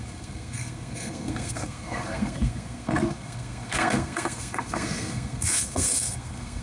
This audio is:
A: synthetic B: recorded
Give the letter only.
A